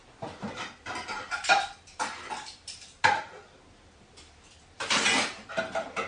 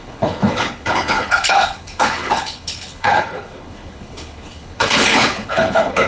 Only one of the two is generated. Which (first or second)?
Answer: second